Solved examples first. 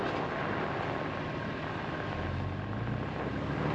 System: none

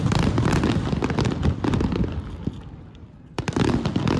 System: none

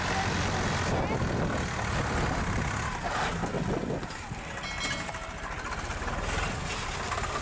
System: none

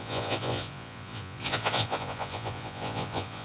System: vocoder, Vocos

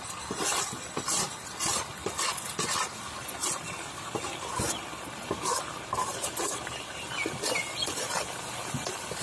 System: none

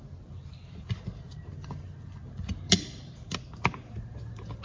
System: none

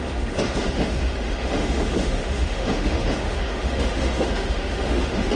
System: autoencoder, DAC-VAE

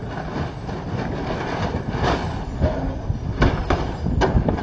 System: none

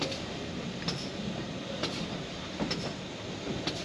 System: none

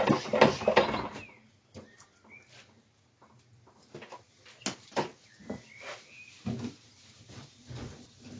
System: none